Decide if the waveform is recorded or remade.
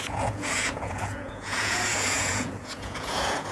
remade